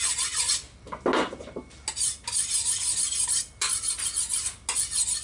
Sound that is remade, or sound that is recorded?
recorded